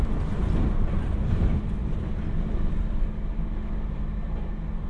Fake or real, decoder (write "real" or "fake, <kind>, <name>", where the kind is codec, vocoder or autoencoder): fake, vocoder, BigVGAN v2